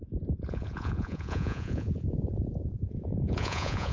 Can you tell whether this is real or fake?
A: fake